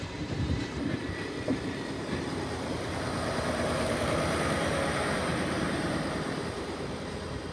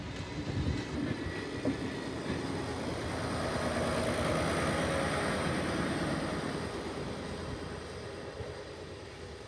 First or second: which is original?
second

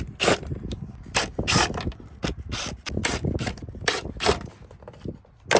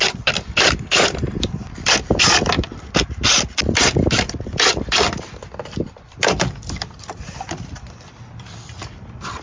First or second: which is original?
first